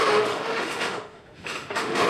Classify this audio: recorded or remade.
remade